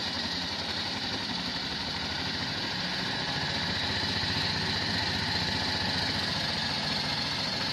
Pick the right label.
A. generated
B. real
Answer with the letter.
B